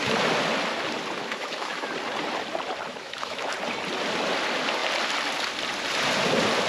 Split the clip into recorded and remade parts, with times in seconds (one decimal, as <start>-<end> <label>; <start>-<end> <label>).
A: 0.0-1.2 recorded; 1.2-1.9 remade; 1.9-2.9 recorded; 2.9-3.5 remade; 3.5-6.7 recorded